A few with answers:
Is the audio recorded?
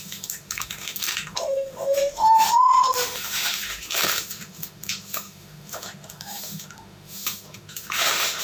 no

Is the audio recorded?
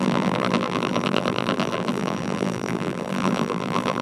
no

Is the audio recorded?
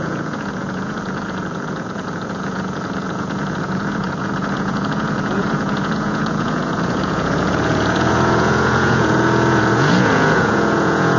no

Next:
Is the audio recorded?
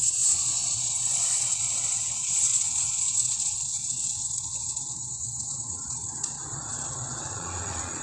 no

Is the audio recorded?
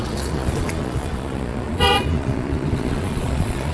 no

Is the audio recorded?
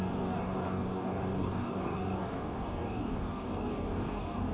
no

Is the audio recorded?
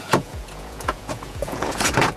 no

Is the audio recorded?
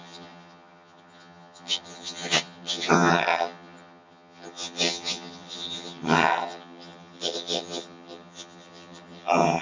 no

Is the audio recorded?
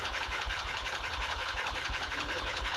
no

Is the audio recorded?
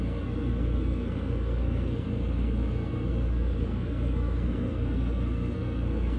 no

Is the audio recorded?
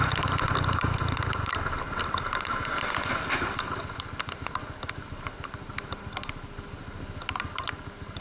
yes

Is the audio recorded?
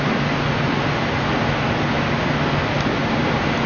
yes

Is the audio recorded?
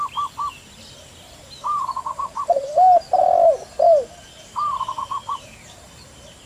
yes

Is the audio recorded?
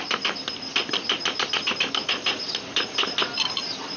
no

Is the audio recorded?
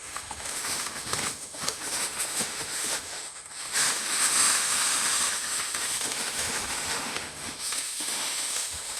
no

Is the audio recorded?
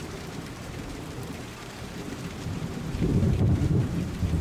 no